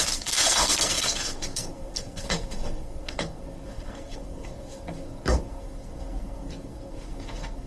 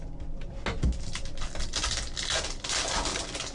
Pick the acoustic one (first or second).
second